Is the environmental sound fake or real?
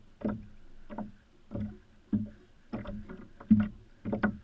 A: real